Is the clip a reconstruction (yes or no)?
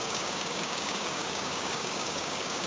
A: yes